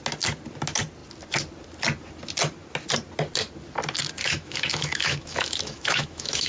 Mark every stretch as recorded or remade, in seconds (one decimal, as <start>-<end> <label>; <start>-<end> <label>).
0.0-4.2 recorded; 4.2-6.5 remade